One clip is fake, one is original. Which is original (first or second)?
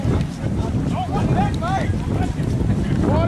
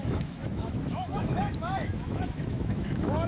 first